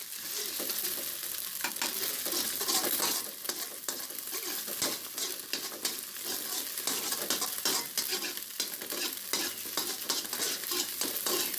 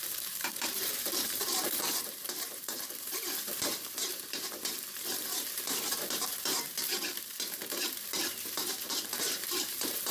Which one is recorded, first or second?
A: first